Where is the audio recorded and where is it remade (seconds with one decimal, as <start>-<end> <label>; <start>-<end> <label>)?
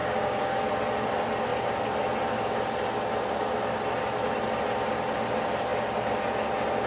0.0-0.7 remade; 0.7-6.9 recorded